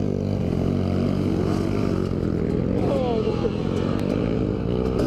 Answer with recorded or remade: recorded